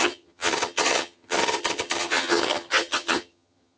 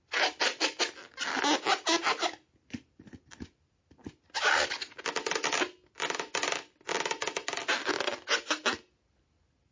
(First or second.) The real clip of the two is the second